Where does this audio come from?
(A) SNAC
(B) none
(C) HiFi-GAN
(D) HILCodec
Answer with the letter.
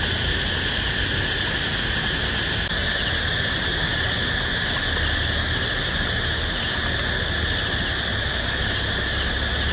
B